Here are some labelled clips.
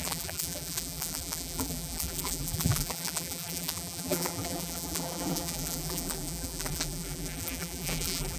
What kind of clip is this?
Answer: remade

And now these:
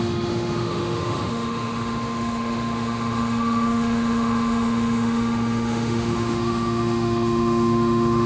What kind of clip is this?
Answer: remade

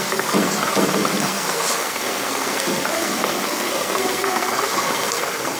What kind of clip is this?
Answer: remade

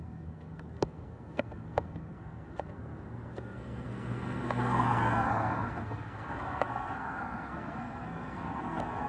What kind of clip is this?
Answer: remade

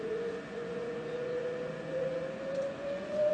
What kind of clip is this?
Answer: remade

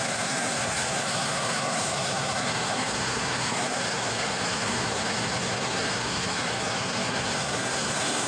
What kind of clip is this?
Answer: remade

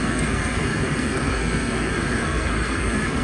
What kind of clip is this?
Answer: remade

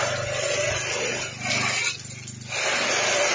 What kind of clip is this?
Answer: recorded